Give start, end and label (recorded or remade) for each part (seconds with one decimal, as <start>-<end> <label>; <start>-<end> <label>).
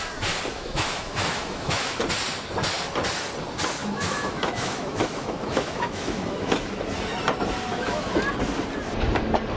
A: 0.0-0.5 recorded; 0.5-2.0 remade; 2.0-3.8 recorded; 3.8-6.5 remade; 6.5-7.7 recorded; 7.7-8.2 remade; 8.2-9.6 recorded